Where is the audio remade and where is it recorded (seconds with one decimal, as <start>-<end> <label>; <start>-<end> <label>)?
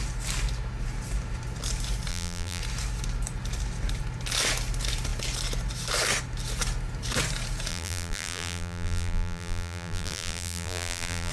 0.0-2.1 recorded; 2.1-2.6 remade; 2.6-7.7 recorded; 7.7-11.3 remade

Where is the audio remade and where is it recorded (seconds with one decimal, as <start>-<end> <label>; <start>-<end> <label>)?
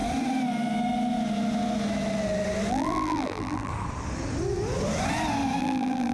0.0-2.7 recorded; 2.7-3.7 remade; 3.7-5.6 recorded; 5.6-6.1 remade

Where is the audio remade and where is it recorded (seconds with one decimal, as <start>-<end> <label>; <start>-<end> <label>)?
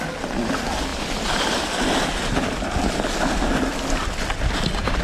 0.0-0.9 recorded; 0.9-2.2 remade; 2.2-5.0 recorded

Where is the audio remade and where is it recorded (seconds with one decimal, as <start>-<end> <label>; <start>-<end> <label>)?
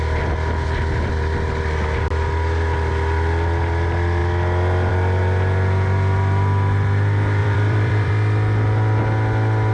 0.0-7.4 recorded; 7.4-8.1 remade; 8.1-9.7 recorded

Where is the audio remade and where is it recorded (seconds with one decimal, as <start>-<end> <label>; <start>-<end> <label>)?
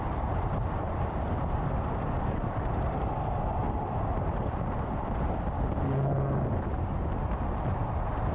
0.0-3.6 remade; 3.6-7.8 recorded; 7.8-8.3 remade